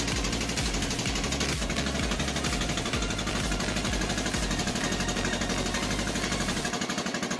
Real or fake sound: real